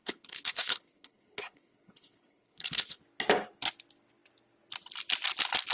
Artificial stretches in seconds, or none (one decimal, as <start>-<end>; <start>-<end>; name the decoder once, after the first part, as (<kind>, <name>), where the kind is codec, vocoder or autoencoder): 0.0-3.0 (codec, HILCodec)